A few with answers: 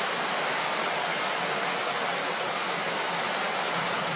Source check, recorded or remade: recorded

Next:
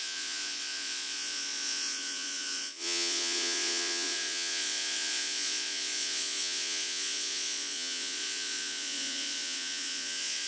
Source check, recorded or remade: remade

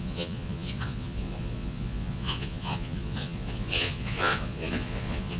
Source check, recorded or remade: remade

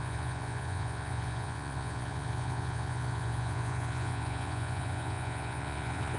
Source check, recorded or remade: remade